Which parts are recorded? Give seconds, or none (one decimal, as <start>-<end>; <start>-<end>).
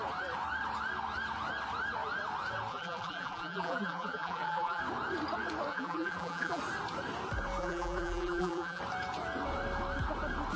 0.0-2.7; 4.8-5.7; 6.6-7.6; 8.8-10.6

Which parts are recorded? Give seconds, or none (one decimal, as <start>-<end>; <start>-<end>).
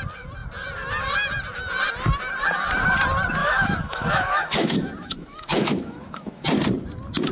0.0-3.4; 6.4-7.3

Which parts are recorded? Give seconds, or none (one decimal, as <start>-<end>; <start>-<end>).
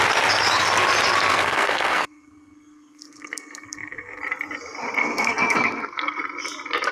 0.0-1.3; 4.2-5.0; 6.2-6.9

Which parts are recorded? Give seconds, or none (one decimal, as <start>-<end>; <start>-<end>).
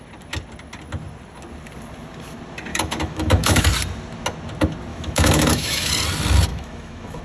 0.0-2.7; 3.6-4.9; 5.9-6.5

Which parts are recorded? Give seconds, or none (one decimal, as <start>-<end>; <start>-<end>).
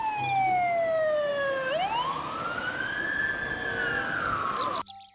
0.0-5.1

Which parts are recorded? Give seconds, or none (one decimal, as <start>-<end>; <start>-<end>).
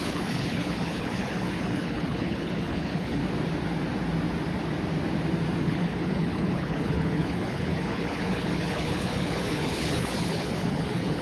3.2-5.6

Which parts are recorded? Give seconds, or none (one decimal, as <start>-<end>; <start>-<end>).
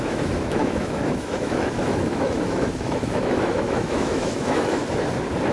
4.8-5.5